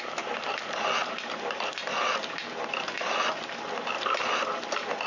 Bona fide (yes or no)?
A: yes